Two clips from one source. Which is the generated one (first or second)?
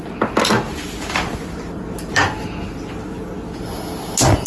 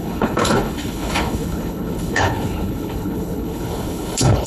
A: second